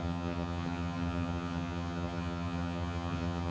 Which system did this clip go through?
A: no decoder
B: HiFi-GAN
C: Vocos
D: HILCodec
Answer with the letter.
B